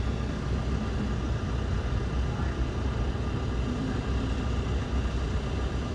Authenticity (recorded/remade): recorded